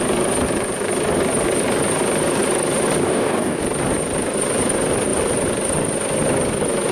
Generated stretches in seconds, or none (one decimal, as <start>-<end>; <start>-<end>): 3.0-3.6